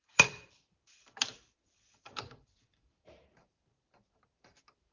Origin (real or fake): fake